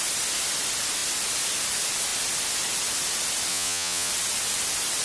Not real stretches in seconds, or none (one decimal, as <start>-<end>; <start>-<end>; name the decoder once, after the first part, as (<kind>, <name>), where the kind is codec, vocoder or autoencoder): 3.5-4.1 (vocoder, Vocos)